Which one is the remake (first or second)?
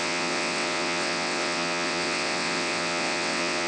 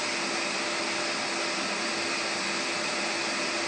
first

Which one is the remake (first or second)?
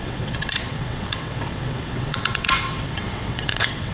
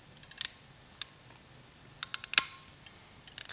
first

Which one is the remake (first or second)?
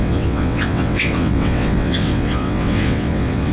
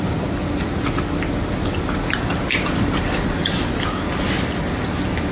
first